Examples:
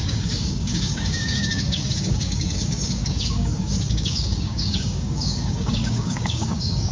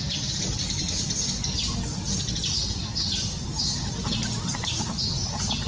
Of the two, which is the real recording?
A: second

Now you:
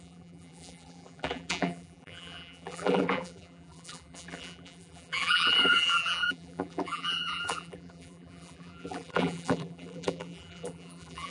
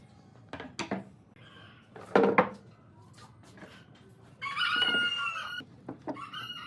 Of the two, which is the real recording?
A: second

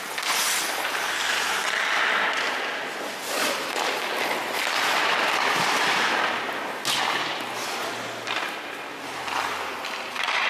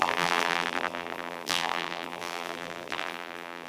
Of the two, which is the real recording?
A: first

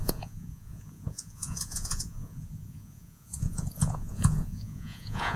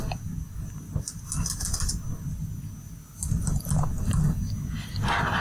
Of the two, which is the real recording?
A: second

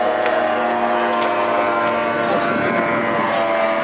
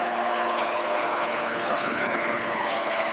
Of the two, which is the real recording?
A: first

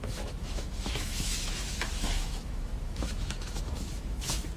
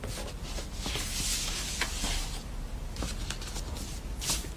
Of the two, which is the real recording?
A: second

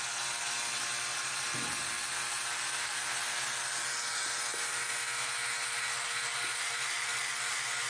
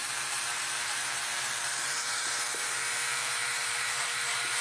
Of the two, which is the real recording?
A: first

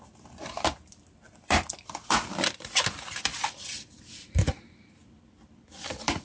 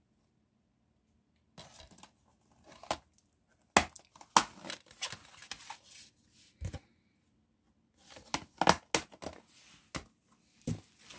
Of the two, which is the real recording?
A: second